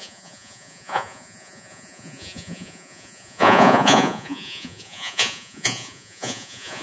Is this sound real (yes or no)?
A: no